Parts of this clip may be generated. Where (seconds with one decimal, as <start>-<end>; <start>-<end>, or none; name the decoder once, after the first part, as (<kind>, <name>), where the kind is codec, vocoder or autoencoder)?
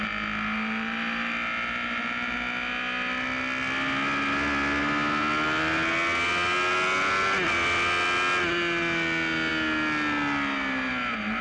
none